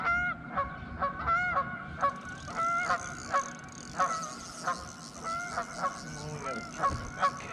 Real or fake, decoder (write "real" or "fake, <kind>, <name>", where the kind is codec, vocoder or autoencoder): real